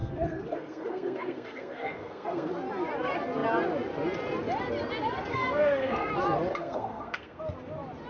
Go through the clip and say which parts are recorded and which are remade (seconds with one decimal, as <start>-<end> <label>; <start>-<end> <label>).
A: 0.0-2.5 remade; 2.5-5.3 recorded; 5.3-6.1 remade; 6.1-6.5 recorded; 6.5-7.4 remade; 7.4-8.1 recorded